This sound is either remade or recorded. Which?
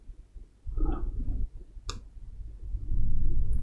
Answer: recorded